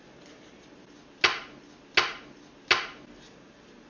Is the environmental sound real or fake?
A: real